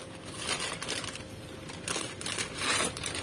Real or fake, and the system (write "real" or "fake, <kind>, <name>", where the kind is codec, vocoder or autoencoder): real